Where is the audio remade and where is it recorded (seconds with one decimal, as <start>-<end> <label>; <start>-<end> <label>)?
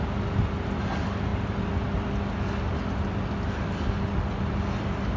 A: 0.0-5.2 recorded